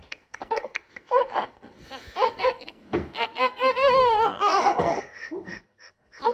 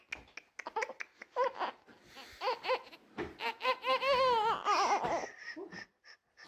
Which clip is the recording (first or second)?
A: second